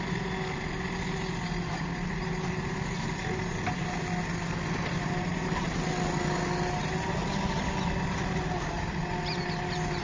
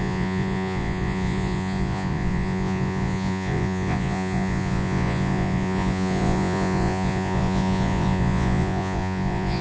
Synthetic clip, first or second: second